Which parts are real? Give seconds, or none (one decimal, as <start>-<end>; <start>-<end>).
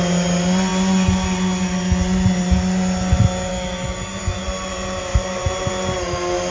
0.0-5.1; 5.7-6.5